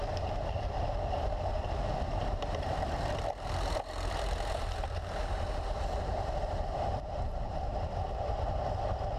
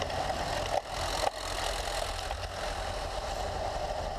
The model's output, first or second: first